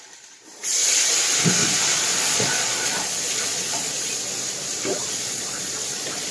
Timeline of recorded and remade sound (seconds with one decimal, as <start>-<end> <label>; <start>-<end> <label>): 0.0-1.6 recorded; 1.6-4.2 remade; 4.2-5.0 recorded; 5.0-6.3 remade